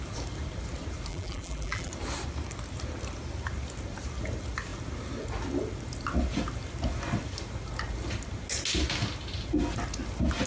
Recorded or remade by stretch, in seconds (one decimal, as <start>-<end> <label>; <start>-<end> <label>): 0.0-1.1 recorded; 1.1-1.9 remade; 1.9-10.5 recorded